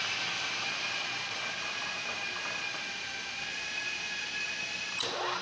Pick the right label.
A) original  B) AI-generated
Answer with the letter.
A